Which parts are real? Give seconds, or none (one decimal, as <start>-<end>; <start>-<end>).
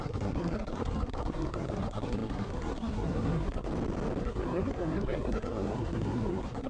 3.7-4.2